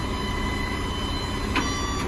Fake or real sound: real